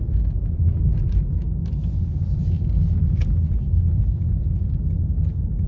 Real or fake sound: real